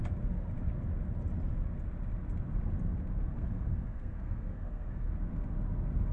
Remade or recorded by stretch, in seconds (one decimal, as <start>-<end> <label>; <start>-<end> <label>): 0.0-3.3 recorded; 3.3-5.1 remade; 5.1-6.1 recorded